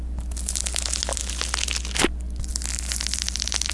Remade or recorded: recorded